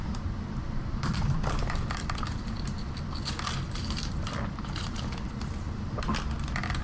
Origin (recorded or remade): remade